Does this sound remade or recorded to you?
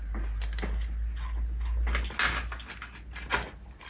recorded